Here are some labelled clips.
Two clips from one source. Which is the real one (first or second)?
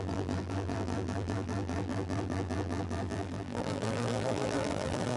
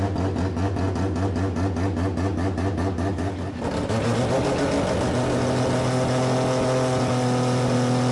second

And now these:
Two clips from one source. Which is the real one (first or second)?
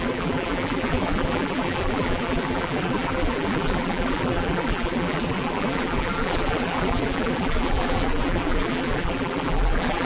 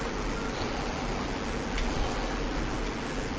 second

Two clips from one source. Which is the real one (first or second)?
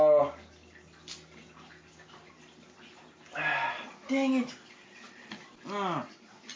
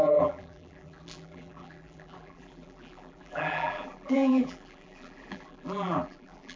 first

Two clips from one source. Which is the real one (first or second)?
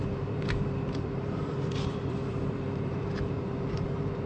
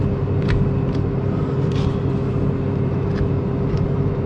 second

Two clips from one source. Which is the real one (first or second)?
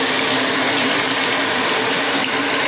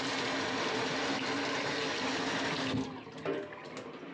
second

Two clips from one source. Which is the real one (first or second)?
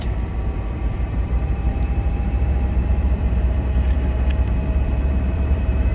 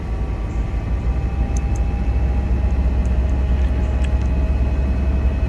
second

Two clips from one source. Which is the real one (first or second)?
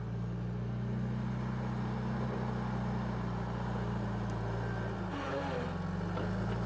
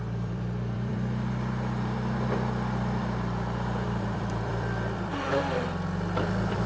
first